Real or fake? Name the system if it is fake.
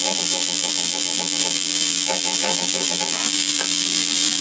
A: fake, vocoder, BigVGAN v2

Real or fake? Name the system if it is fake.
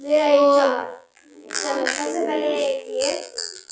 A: fake, vocoder, BigVGAN v2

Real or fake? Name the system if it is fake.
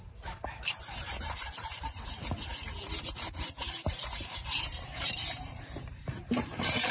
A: fake, vocoder, BigVGAN v2